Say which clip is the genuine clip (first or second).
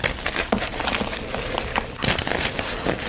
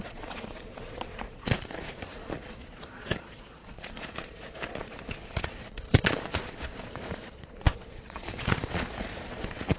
first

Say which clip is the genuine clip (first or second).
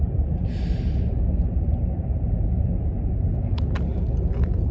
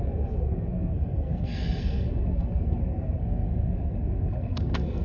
first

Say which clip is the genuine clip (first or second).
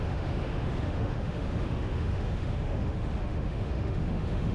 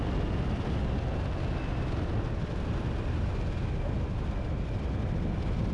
second